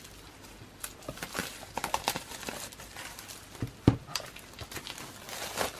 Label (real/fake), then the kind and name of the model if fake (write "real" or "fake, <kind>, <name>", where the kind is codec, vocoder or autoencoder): real